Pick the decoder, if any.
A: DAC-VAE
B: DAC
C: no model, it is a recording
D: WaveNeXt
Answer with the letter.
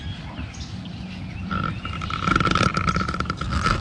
C